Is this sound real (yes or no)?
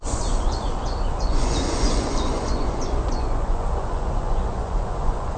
no